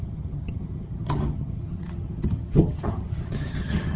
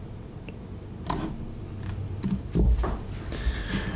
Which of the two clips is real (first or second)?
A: second